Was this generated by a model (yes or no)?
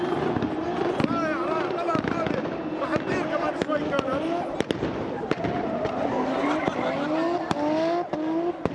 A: no